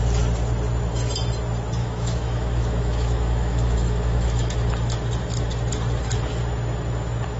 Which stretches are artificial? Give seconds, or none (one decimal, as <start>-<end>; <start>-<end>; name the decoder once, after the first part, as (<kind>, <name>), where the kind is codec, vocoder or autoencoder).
1.8-4.7 (autoencoder, DAC-VAE)